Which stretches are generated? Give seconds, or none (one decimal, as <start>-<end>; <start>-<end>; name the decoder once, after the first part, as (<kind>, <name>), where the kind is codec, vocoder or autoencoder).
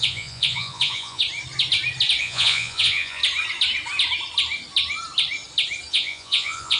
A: 0.0-1.2 (vocoder, Vocos); 2.2-3.2; 5.9-6.8